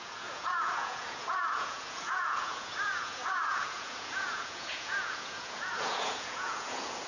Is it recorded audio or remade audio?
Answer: remade